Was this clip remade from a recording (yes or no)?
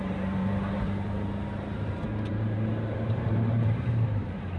yes